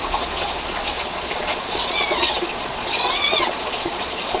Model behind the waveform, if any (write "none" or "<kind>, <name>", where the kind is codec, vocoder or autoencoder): vocoder, Vocos